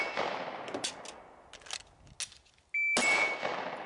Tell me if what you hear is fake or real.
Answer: real